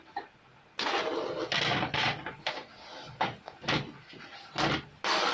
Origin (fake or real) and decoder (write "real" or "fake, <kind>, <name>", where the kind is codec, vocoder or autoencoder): real